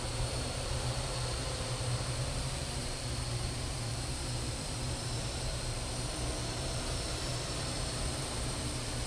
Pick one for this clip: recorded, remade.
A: remade